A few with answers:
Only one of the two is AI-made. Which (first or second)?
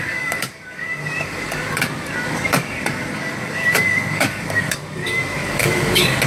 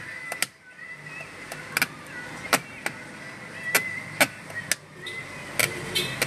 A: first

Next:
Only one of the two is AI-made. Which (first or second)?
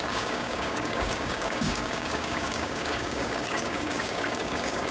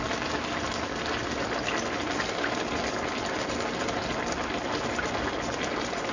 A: first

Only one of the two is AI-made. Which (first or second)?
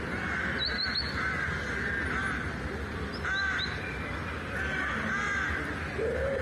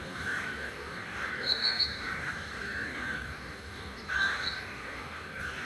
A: second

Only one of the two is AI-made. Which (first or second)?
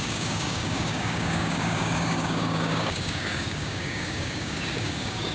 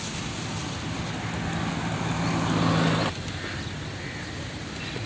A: first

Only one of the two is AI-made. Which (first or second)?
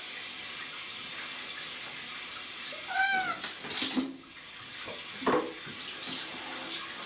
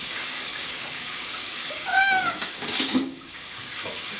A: second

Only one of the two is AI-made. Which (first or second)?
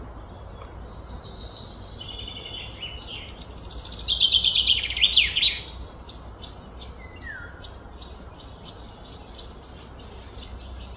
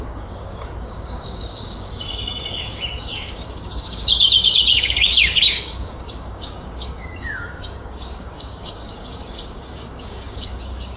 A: second